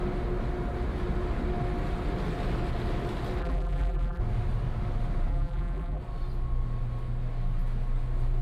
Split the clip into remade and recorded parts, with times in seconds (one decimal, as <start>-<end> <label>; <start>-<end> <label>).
0.0-3.4 recorded; 3.4-4.2 remade; 4.2-5.3 recorded; 5.3-6.0 remade; 6.0-8.4 recorded